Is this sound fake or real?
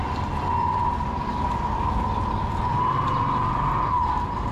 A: real